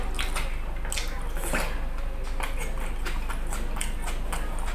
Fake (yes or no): no